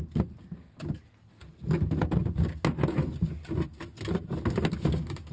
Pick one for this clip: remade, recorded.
recorded